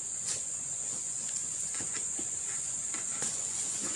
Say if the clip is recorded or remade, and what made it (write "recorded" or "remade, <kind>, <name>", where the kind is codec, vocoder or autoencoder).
remade, vocoder, Vocos